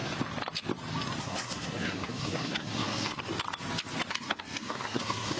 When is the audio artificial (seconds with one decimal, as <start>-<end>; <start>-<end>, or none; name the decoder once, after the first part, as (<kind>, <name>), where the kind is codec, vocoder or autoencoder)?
1.2-3.2 (codec, SNAC); 4.1-5.4